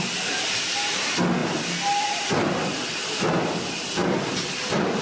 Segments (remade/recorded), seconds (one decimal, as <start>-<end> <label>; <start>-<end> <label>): 0.0-5.0 recorded